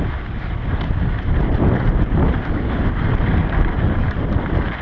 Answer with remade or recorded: remade